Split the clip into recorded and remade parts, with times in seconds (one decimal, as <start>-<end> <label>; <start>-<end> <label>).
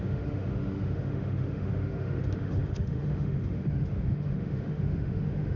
0.0-5.6 remade